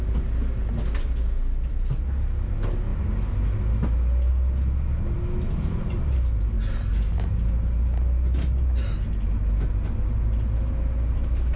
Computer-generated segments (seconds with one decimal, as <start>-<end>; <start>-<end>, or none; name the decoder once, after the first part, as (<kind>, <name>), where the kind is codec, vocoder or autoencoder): none